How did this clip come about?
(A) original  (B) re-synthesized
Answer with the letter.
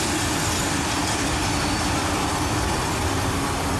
A